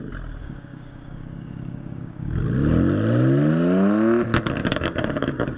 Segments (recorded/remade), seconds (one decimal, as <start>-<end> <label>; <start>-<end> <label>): 0.0-0.4 recorded; 0.4-2.4 remade; 2.4-4.6 recorded; 4.6-5.6 remade